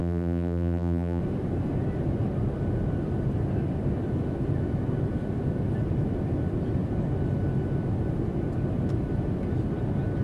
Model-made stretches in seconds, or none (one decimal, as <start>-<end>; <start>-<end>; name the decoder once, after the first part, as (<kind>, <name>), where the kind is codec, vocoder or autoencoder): 0.0-1.2 (vocoder, BigVGAN v2)